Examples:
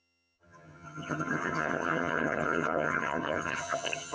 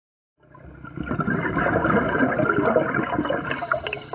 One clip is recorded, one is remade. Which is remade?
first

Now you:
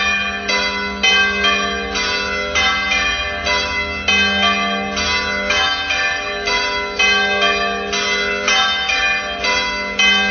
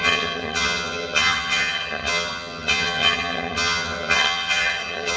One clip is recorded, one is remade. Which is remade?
second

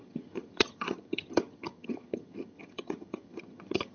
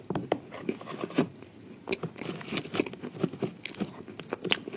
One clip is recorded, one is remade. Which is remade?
first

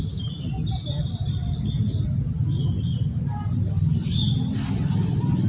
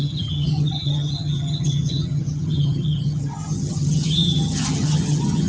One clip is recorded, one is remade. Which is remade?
second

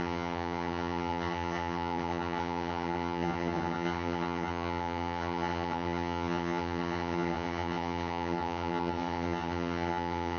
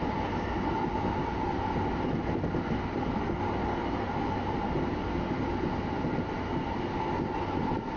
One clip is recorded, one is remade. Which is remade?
first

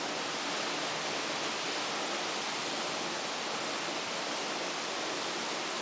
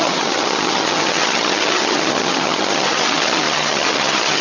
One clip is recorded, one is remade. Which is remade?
second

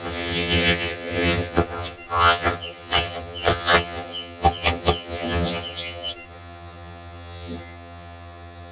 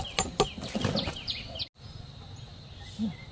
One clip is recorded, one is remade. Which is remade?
first